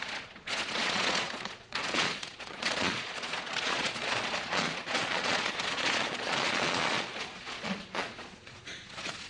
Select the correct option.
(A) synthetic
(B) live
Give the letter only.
A